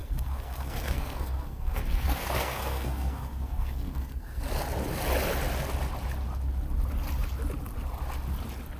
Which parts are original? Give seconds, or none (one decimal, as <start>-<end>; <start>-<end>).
4.4-8.8